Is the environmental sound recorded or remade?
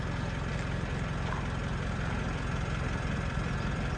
recorded